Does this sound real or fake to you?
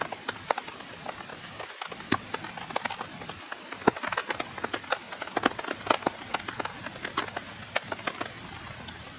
real